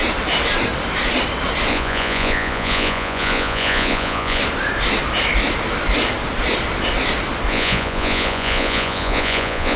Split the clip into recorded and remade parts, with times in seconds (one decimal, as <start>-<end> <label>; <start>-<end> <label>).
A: 0.0-1.7 recorded; 1.7-4.4 remade; 4.4-7.5 recorded; 7.5-9.8 remade